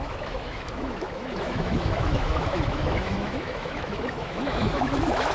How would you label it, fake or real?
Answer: fake